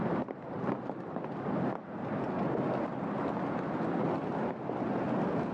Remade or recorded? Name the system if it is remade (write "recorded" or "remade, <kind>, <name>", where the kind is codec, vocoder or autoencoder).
recorded